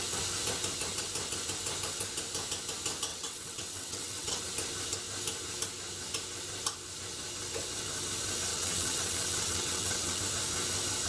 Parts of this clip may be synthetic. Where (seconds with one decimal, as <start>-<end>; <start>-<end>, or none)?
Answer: 3.1-4.4; 8.5-10.2